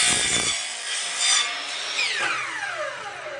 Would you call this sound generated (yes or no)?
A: no